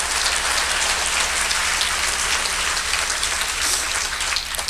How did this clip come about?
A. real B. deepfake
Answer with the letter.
A